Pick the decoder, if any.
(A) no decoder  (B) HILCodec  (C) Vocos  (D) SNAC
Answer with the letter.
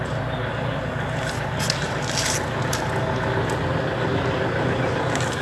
A